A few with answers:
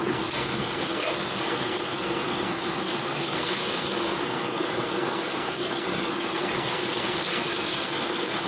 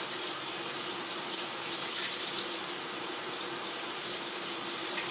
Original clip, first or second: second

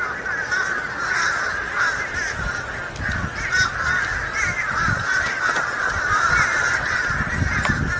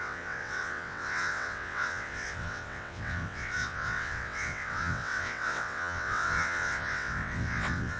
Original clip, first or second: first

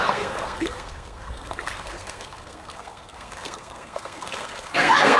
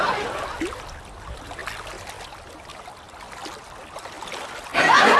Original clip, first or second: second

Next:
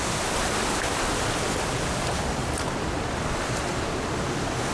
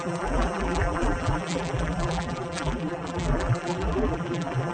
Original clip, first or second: first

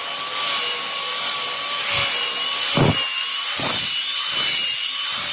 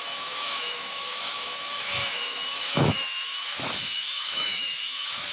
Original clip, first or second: first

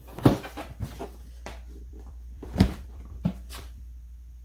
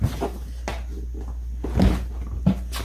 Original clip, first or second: second